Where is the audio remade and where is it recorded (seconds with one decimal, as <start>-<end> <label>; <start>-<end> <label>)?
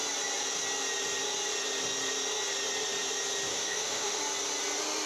0.0-3.5 recorded; 3.5-4.2 remade; 4.2-5.1 recorded